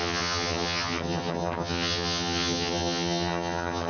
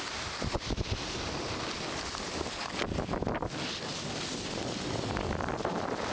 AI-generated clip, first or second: first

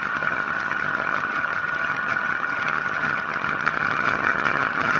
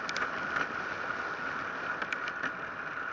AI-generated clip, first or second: first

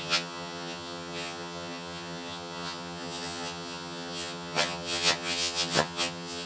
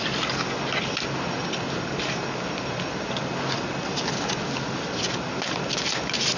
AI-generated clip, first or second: first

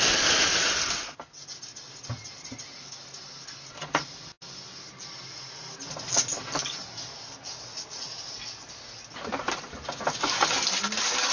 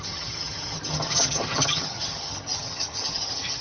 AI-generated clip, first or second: second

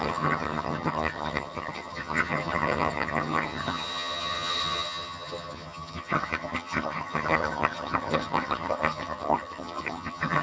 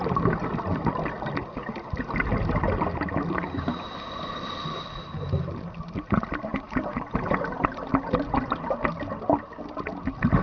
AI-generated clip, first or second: first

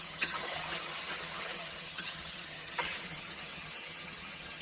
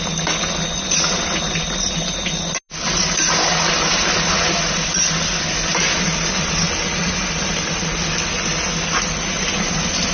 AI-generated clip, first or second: first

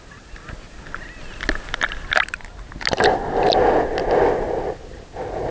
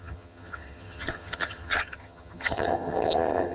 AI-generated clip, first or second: second